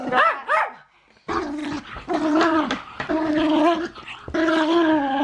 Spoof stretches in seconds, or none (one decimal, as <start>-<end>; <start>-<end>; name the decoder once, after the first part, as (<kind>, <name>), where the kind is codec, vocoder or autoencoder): 1.6-3.1 (vocoder, BigVGAN v2)